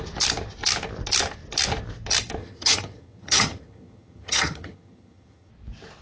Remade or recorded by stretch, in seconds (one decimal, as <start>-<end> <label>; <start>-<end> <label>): 0.0-2.4 recorded; 2.4-5.5 remade; 5.5-6.0 recorded